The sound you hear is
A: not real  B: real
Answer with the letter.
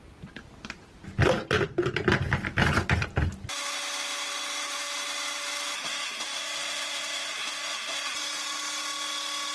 B